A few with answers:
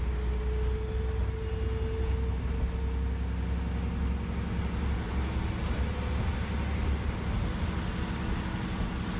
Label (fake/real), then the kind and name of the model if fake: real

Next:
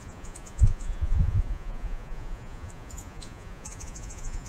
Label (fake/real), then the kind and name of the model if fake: fake, vocoder, Vocos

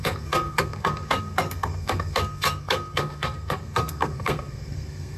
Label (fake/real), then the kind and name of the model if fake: fake, codec, SNAC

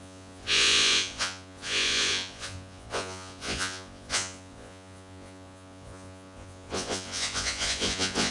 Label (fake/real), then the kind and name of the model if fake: fake, vocoder, Vocos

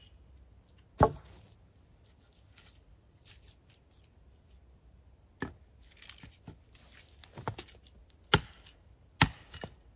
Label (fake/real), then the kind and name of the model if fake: real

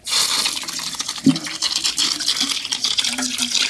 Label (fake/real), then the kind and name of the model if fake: real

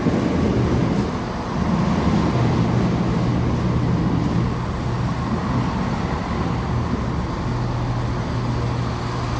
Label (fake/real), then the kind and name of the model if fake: real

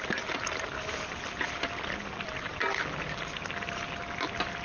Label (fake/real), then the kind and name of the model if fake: real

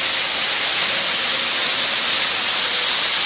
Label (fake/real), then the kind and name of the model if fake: real